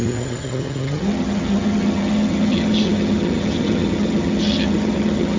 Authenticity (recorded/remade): remade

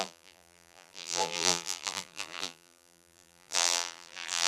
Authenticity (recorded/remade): remade